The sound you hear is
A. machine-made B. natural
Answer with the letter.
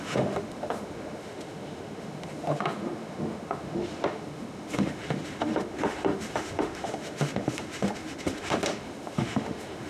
A